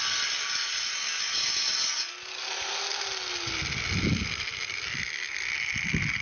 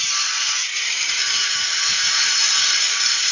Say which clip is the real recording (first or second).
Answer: first